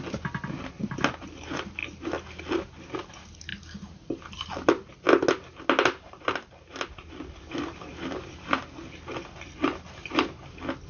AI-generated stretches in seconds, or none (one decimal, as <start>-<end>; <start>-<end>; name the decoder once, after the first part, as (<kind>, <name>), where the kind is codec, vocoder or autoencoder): none